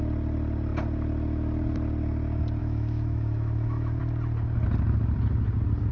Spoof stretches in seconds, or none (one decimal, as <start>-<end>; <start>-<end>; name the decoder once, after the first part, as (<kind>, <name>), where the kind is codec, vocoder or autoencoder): 2.6-4.0 (autoencoder, DAC-VAE)